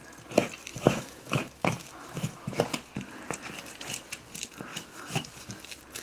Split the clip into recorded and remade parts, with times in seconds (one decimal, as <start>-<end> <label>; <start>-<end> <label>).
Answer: 0.0-0.7 recorded; 0.7-2.6 remade; 2.6-4.7 recorded; 4.7-5.5 remade; 5.5-6.0 recorded